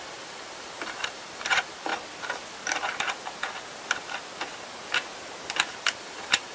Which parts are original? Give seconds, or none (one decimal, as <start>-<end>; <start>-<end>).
1.9-5.8